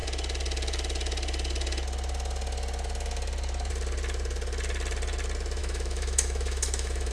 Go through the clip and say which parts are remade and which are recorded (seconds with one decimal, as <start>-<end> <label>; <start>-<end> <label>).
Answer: 0.0-5.6 recorded; 5.6-7.1 remade